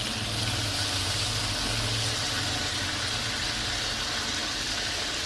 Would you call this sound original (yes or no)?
yes